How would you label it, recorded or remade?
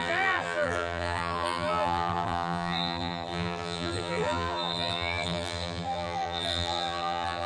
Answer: remade